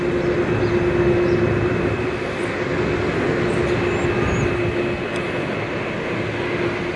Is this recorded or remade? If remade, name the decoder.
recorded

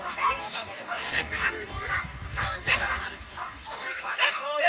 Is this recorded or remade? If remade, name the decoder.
remade, codec, DAC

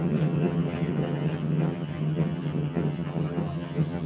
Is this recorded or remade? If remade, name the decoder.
remade, vocoder, HiFi-GAN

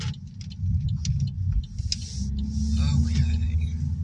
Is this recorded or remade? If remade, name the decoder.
recorded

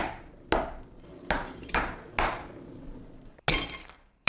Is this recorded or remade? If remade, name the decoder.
recorded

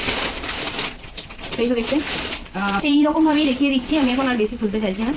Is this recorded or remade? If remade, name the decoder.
remade, vocoder, Vocos